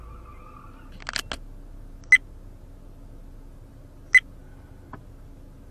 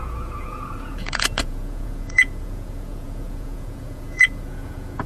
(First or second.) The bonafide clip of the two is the first